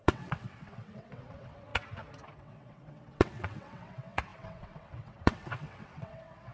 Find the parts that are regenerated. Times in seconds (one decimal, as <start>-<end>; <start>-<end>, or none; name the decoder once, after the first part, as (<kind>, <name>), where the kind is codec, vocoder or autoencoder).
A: 0.0-1.7 (vocoder, WaveNeXt); 2.4-6.5